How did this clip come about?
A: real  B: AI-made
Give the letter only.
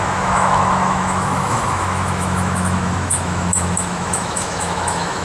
B